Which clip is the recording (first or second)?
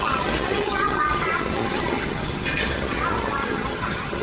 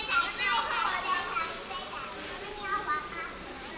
second